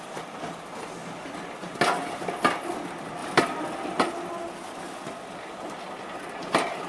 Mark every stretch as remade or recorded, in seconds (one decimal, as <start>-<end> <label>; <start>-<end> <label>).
0.0-6.9 recorded

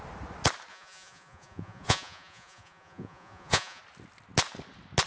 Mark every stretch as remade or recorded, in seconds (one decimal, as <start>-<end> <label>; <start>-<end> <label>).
0.0-0.7 recorded; 0.7-3.8 remade; 3.8-5.1 recorded

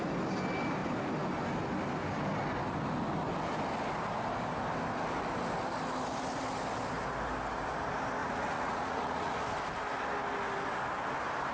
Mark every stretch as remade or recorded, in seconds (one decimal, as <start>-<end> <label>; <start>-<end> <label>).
0.0-8.2 recorded; 8.2-9.3 remade; 9.3-11.5 recorded

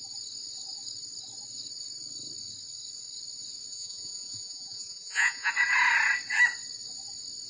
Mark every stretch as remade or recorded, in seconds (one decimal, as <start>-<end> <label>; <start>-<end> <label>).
0.0-3.7 recorded; 3.7-5.5 remade; 5.5-7.5 recorded